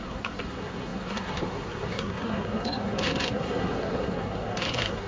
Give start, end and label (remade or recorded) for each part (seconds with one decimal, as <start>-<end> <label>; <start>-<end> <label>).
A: 0.0-5.1 remade